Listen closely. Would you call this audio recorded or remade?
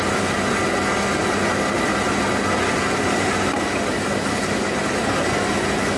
recorded